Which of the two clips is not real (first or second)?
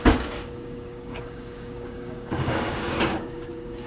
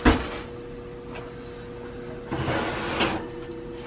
first